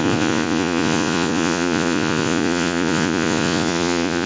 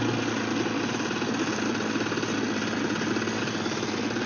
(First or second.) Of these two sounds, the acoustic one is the second